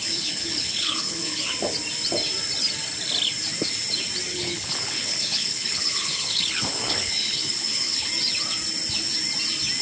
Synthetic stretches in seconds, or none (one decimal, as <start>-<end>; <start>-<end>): 0.0-1.5; 4.3-8.1